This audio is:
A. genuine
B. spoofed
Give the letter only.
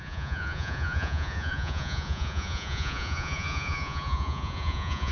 B